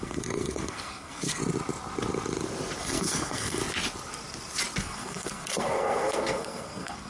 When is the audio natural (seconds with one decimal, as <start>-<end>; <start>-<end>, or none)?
1.4-2.8; 3.6-4.8